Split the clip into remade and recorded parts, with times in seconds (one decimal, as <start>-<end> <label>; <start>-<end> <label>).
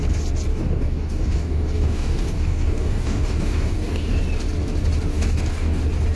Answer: 0.0-0.5 recorded; 0.5-4.2 remade; 4.2-5.1 recorded; 5.1-5.8 remade; 5.8-6.2 recorded